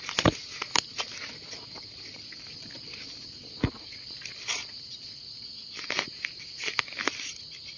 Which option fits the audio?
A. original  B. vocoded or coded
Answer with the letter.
A